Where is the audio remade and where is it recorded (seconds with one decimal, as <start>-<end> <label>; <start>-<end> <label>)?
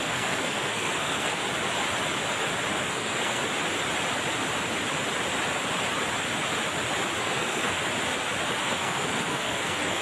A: 0.0-1.4 remade; 1.4-2.7 recorded; 2.7-3.4 remade; 3.4-7.2 recorded; 7.2-7.8 remade; 7.8-8.6 recorded; 8.6-10.0 remade